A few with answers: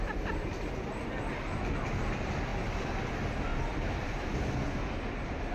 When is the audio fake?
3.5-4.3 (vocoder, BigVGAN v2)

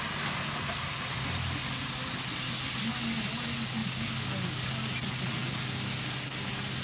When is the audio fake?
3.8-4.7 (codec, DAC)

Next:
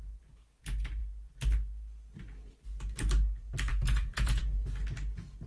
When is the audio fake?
3.7-4.4 (vocoder, Vocos)

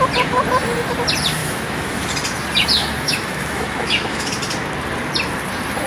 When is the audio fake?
1.4-2.1 (autoencoder, DAC-VAE); 2.8-4.3

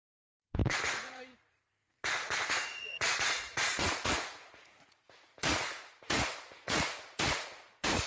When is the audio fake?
0.0-1.8 (vocoder, Vocos); 2.5-8.1

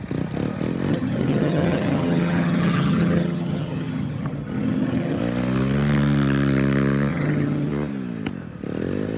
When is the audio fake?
0.9-5.2 (vocoder, HiFi-GAN); 7.1-7.7